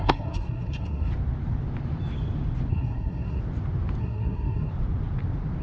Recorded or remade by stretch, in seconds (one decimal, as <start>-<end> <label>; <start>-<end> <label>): 0.0-1.1 remade; 1.1-2.7 recorded; 2.7-3.4 remade; 3.4-4.0 recorded; 4.0-4.7 remade; 4.7-5.6 recorded